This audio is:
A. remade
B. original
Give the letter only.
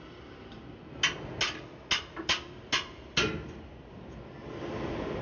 B